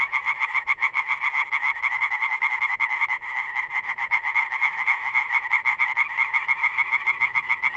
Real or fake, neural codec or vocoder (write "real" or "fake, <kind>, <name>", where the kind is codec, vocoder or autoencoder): fake, autoencoder, DAC-VAE